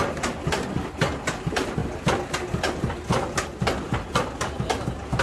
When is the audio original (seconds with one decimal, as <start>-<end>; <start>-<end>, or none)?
0.0-5.2